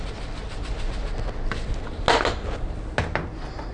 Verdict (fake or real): real